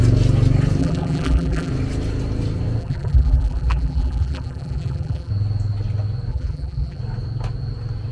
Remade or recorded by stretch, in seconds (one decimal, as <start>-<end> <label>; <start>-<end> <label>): 0.0-0.8 recorded; 0.8-1.7 remade; 1.7-2.8 recorded; 2.8-5.3 remade; 5.3-6.3 recorded; 6.3-7.0 remade; 7.0-8.1 recorded